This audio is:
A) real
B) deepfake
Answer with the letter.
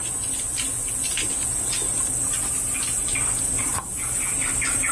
A